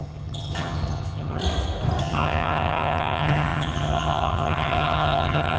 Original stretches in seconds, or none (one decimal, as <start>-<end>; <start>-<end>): 1.4-2.0